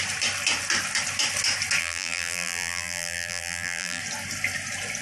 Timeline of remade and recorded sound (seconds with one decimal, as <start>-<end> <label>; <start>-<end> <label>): 0.0-1.8 recorded; 1.8-4.0 remade; 4.0-5.0 recorded